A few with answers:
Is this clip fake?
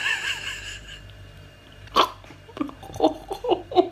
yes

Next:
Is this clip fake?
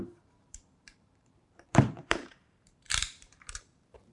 yes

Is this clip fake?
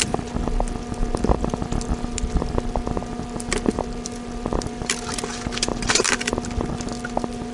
yes